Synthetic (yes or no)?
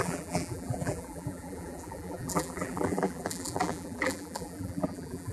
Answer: yes